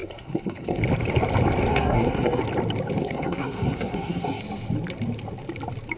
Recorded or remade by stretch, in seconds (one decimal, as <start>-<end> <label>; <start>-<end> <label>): 0.0-0.8 remade; 0.8-1.7 recorded; 1.7-2.4 remade; 2.4-3.0 recorded; 3.0-4.4 remade; 4.4-6.0 recorded